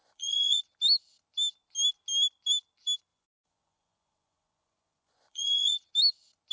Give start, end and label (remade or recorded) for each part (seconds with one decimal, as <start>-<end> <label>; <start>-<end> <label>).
0.0-0.6 remade; 0.6-3.1 recorded; 3.1-5.9 remade; 5.9-6.5 recorded